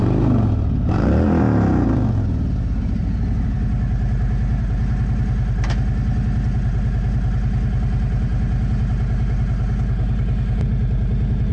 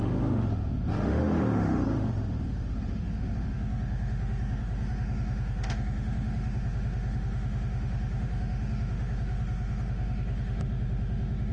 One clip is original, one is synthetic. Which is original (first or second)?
first